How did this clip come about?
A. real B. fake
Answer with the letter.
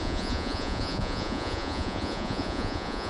B